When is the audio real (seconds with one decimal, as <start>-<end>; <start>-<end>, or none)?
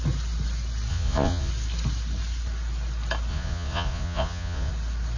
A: 0.0-0.9; 1.5-3.3; 4.7-5.2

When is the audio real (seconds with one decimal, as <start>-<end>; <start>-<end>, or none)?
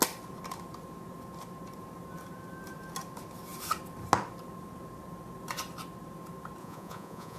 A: 0.0-6.6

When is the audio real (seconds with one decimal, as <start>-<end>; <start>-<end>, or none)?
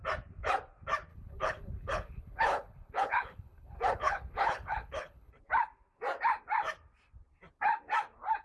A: 0.0-1.1; 5.3-8.4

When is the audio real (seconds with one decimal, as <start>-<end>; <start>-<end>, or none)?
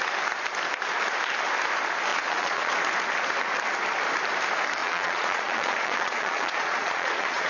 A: 0.0-2.1; 2.7-4.8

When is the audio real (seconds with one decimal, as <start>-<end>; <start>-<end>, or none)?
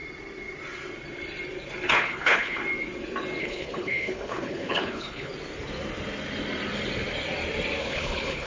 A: 0.0-1.9; 2.6-3.4; 5.3-7.8